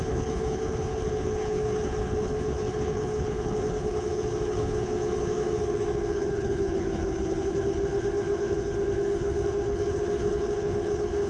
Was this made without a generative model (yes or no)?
no